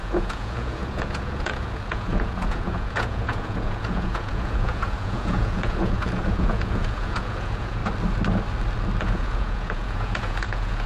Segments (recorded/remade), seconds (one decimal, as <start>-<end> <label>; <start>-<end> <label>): 0.0-7.8 remade; 7.8-9.0 recorded; 9.0-10.9 remade